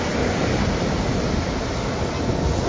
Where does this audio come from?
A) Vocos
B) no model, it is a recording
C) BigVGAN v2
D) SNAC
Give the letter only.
B